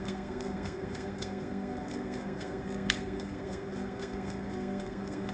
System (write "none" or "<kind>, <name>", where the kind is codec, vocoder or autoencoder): codec, SNAC